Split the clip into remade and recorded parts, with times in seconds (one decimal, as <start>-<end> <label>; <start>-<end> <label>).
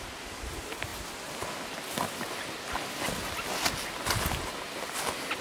0.0-5.4 recorded